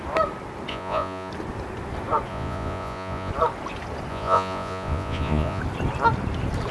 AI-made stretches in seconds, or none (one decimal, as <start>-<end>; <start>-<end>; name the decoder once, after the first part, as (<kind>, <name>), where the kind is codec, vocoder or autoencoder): 0.7-1.3 (vocoder, Vocos); 2.3-3.3; 4.1-5.6